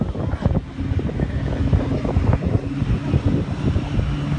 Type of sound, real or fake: real